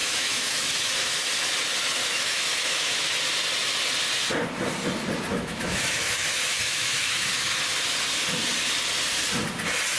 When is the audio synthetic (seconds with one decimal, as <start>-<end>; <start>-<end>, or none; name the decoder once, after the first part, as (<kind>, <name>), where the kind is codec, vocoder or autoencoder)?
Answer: 0.0-0.9 (autoencoder, DAC-VAE); 2.0-3.1; 5.3-7.6